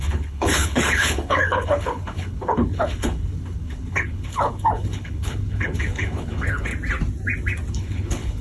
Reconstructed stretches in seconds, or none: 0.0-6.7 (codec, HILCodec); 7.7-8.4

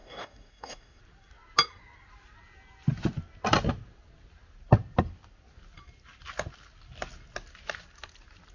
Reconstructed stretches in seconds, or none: 0.0-1.0 (codec, DAC)

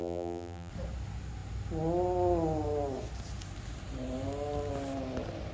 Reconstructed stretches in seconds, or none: 0.0-0.7 (vocoder, BigVGAN v2)

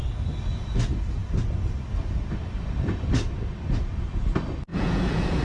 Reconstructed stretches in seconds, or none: 4.7-5.4 (vocoder, Vocos)

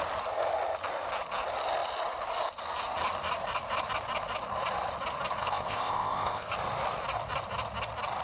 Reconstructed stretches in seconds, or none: 5.4-6.5 (codec, ZipCodec)

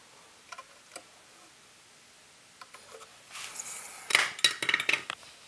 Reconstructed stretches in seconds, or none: none